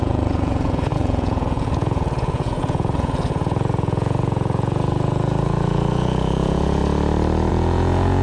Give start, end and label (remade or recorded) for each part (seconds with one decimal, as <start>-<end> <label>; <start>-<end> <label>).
0.0-6.8 remade; 6.8-7.5 recorded; 7.5-8.2 remade